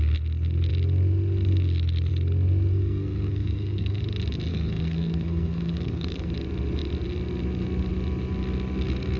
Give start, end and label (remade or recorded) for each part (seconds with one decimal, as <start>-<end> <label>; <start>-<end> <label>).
0.0-2.7 recorded; 2.7-4.0 remade; 4.0-4.5 recorded; 4.5-6.3 remade; 6.3-9.2 recorded